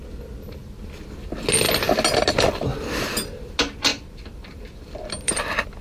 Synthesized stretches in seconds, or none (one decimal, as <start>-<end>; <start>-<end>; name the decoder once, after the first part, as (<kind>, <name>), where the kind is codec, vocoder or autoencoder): 3.9-5.3 (vocoder, BigVGAN v2)